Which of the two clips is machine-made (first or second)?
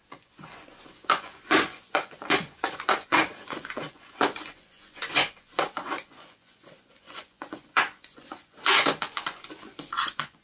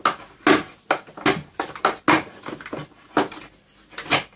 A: first